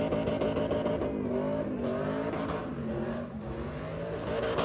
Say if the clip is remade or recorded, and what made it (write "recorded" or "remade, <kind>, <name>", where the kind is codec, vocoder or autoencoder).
recorded